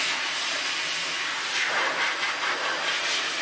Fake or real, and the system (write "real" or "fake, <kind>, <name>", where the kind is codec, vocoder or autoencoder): real